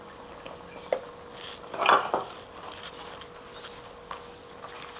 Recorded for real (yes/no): yes